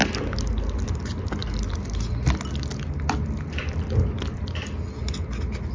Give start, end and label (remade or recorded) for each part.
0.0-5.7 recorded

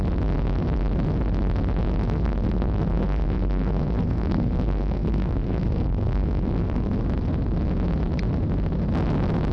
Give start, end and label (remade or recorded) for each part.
0.0-2.0 recorded; 2.0-7.0 remade; 7.0-9.5 recorded

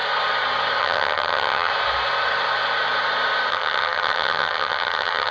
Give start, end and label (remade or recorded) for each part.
0.0-0.8 recorded; 0.8-1.7 remade; 1.7-3.5 recorded; 3.5-5.3 remade

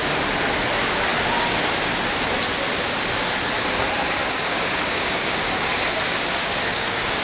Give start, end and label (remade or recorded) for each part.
0.0-4.2 recorded; 4.2-5.7 remade; 5.7-6.4 recorded; 6.4-7.2 remade

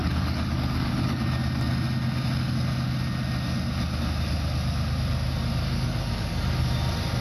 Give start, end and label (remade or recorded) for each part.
0.0-1.2 remade; 1.2-5.6 recorded; 5.6-6.7 remade; 6.7-7.2 recorded